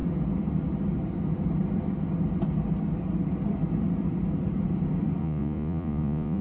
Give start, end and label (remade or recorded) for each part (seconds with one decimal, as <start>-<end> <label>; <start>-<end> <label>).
0.0-5.2 recorded; 5.2-6.4 remade